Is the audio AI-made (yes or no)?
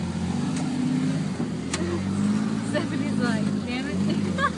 no